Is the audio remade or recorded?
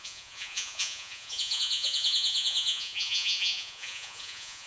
remade